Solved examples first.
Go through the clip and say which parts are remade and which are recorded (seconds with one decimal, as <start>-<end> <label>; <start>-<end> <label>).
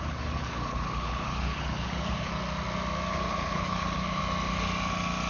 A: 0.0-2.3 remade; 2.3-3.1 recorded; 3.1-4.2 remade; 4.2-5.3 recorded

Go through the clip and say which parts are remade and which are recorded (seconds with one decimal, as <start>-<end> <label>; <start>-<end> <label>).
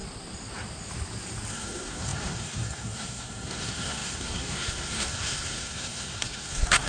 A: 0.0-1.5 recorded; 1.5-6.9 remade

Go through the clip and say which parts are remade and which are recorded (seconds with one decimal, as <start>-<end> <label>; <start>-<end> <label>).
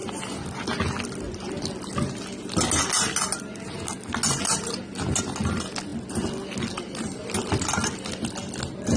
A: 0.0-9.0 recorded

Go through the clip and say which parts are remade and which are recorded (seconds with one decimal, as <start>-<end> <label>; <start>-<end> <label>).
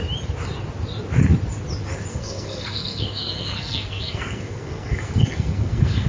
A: 0.0-2.1 recorded; 2.1-6.1 remade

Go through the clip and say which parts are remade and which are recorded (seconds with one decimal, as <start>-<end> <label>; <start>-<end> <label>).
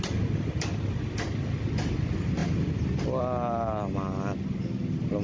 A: 0.0-5.2 recorded